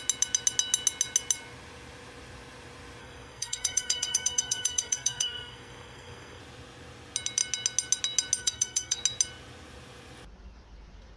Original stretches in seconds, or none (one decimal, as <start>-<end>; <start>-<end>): 0.0-3.0; 6.4-8.4; 9.0-11.2